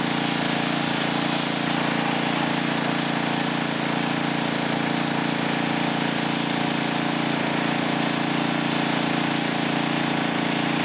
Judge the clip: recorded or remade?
recorded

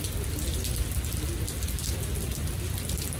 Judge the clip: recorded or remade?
recorded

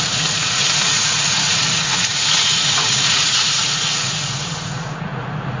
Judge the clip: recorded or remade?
remade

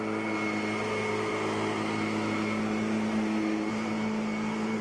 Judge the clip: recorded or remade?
recorded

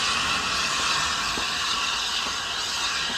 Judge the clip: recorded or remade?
recorded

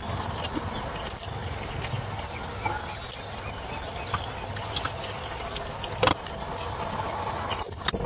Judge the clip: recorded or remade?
recorded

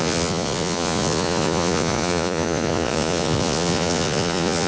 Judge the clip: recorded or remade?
remade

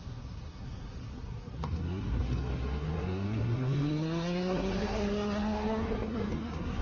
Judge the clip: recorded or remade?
remade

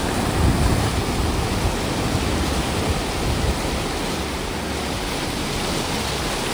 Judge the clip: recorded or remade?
recorded